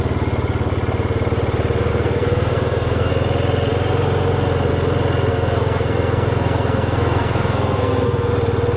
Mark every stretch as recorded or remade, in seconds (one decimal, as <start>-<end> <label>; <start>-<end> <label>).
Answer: 0.0-1.9 recorded; 1.9-3.1 remade; 3.1-5.3 recorded; 5.3-8.3 remade; 8.3-8.8 recorded